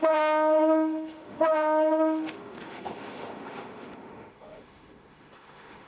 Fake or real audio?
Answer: fake